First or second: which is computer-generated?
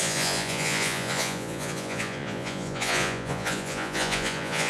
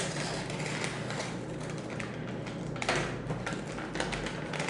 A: first